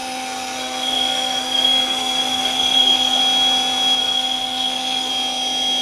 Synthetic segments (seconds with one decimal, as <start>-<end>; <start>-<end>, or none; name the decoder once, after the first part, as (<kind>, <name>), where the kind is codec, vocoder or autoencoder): 0.0-3.2 (codec, SNAC); 4.0-5.1